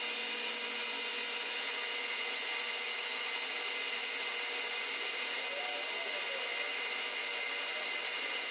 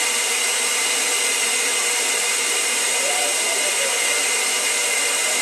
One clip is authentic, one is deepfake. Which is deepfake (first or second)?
second